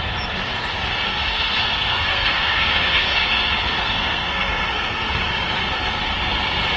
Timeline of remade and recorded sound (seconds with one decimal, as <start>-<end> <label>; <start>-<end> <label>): 0.0-1.1 recorded; 1.1-5.2 remade; 5.2-6.8 recorded

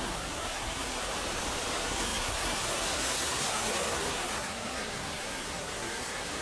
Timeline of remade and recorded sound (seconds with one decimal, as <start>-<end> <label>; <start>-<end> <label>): 0.0-1.1 remade; 1.1-1.7 recorded; 1.7-6.4 remade

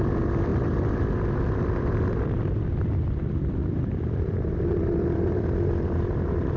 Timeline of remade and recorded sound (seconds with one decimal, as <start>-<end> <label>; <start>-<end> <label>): 0.0-6.6 remade

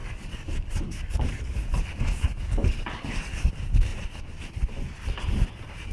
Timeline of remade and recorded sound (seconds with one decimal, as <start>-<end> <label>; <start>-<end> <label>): 0.0-3.5 remade; 3.5-5.9 recorded

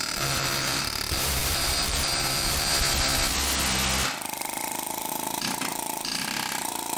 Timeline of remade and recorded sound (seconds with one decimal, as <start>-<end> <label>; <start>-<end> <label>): 0.0-2.7 remade; 2.7-5.1 recorded; 5.1-7.0 remade